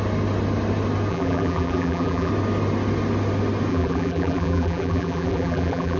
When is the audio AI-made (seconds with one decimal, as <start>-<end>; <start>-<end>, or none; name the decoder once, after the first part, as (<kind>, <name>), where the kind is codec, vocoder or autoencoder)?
1.1-2.3 (vocoder, BigVGAN v2); 3.7-6.0